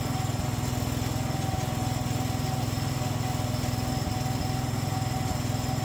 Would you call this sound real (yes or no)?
yes